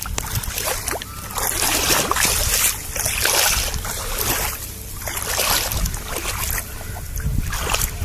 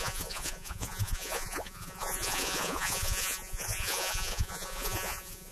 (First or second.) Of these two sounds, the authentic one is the first